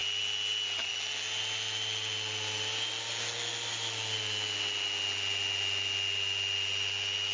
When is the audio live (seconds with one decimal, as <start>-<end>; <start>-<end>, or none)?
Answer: 0.0-7.3